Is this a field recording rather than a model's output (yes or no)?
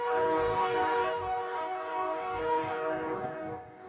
no